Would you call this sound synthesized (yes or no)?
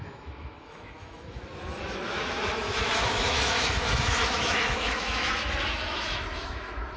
yes